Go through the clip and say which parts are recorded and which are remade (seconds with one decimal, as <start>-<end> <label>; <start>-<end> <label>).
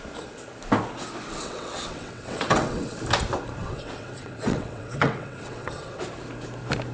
0.0-1.4 recorded; 1.4-3.0 remade; 3.0-3.6 recorded; 3.6-6.0 remade; 6.0-6.9 recorded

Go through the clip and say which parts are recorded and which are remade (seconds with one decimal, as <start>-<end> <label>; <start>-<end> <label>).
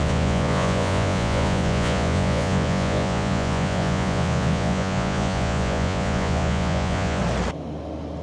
0.0-7.2 remade; 7.2-8.2 recorded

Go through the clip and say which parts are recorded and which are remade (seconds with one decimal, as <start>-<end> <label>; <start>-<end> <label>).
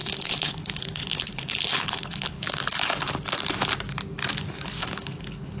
0.0-2.6 remade; 2.6-4.8 recorded; 4.8-5.6 remade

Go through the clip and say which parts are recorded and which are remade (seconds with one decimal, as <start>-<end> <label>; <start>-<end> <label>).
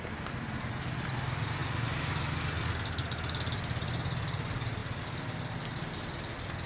0.0-1.6 remade; 1.6-3.3 recorded; 3.3-6.7 remade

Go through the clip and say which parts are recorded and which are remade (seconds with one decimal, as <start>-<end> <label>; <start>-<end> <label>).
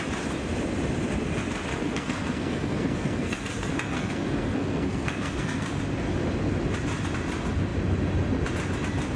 0.0-1.7 recorded; 1.7-5.8 remade; 5.8-9.2 recorded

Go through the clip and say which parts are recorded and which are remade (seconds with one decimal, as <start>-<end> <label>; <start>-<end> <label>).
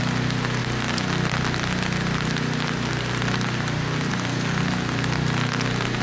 0.0-6.0 recorded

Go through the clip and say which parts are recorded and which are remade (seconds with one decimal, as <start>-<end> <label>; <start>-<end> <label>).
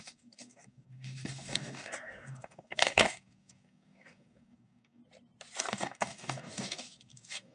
0.0-5.0 remade; 5.0-5.7 recorded; 5.7-7.5 remade